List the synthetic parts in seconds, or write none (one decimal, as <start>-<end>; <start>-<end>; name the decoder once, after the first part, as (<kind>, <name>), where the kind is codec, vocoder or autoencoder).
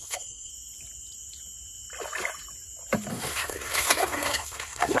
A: 0.0-0.5 (codec, SNAC); 3.1-5.0